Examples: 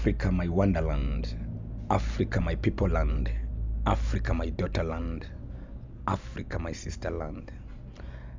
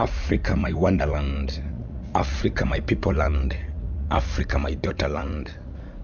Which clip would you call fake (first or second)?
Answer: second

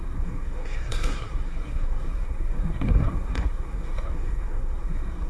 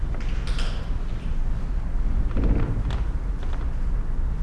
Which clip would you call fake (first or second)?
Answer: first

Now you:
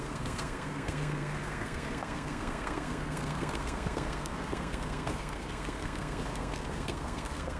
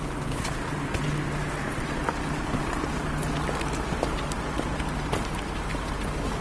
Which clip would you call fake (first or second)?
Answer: first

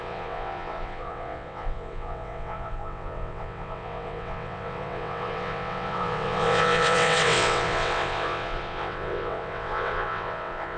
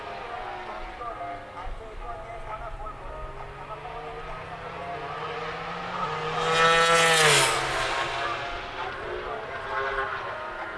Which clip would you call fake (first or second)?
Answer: first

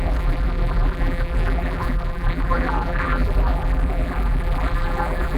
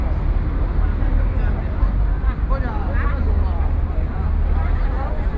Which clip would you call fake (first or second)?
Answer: first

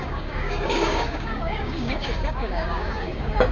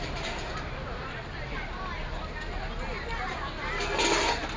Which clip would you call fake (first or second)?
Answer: first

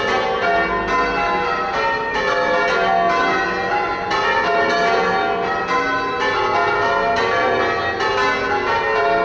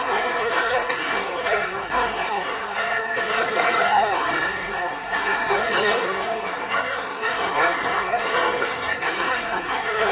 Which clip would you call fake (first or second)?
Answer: second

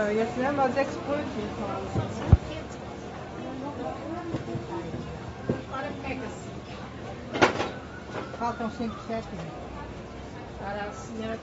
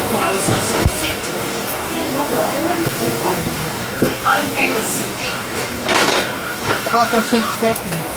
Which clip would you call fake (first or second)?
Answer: second